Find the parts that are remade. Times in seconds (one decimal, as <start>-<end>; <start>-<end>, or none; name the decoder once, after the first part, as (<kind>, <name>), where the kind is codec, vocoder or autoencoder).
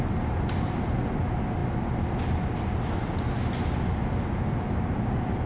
none